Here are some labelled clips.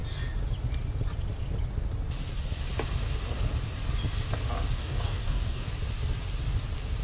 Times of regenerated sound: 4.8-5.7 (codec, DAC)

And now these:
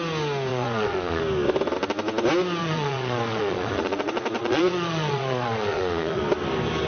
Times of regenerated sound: 0.5-1.2 (vocoder, Vocos); 2.6-6.2

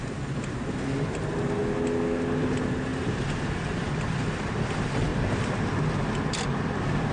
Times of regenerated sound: 0.0-1.6 (vocoder, BigVGAN v2); 2.5-5.1

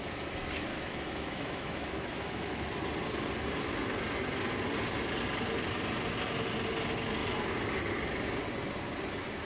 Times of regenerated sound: 0.7-2.7 (autoencoder, DAC-VAE)

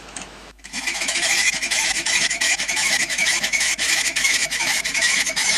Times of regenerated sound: 0.0-5.6 (autoencoder, DAC-VAE)

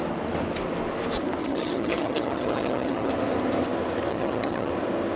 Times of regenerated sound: 1.4-3.1 (vocoder, HiFi-GAN); 4.1-4.7

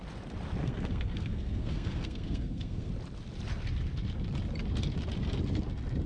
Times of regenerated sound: 0.6-2.9 (codec, SNAC)